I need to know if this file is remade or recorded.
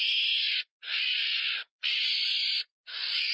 recorded